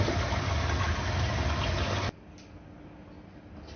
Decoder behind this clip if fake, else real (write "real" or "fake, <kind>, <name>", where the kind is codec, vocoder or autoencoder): real